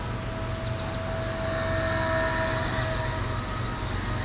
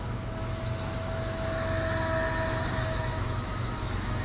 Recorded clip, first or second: first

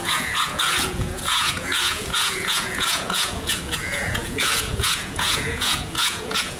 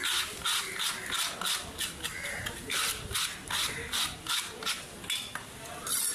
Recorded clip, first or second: second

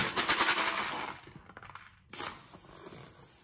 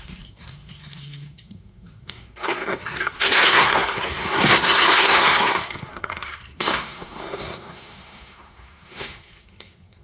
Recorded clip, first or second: first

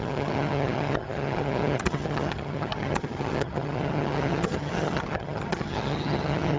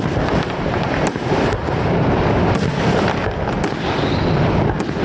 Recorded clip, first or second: second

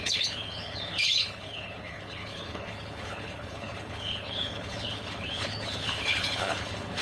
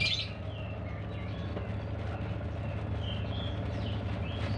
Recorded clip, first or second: second